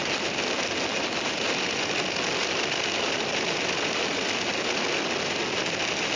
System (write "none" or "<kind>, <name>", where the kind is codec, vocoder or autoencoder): none